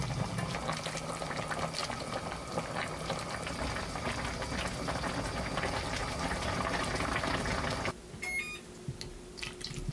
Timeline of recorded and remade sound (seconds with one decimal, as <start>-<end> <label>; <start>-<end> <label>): 0.0-6.0 recorded; 6.0-7.4 remade; 7.4-9.9 recorded

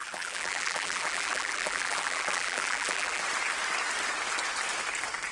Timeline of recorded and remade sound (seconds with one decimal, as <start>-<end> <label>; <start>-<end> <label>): 0.0-3.2 remade; 3.2-5.3 recorded

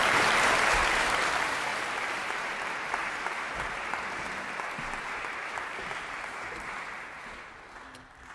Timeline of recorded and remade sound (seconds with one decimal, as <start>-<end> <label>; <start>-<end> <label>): 0.0-8.3 remade

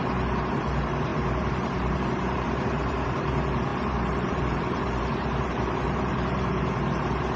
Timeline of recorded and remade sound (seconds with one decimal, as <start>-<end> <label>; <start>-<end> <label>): 0.0-0.5 recorded; 0.5-7.4 remade